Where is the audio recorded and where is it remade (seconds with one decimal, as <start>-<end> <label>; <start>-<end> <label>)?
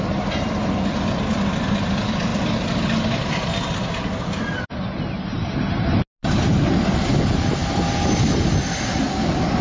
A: 0.0-9.6 recorded